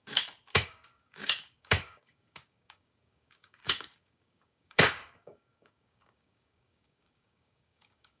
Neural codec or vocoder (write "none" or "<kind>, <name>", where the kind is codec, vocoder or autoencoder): codec, DAC